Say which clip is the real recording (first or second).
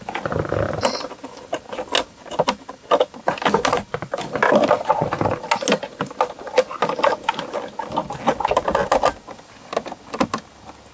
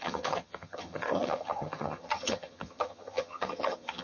first